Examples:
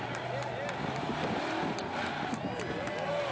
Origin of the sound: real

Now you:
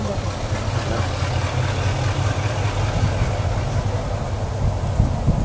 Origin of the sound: real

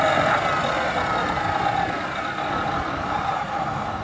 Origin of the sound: real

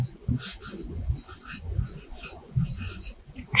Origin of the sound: fake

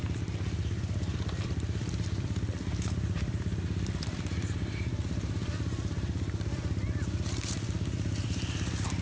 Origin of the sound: fake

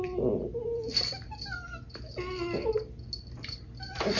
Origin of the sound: real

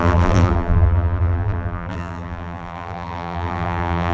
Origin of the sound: fake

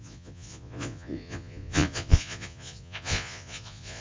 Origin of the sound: fake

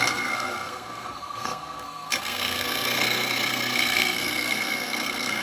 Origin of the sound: fake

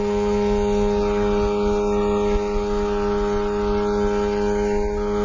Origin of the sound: real